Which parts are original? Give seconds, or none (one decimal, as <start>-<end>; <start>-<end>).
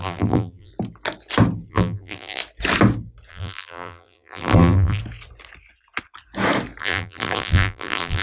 0.7-1.7; 2.4-3.3; 5.0-6.8